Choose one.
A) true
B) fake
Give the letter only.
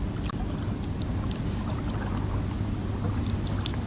A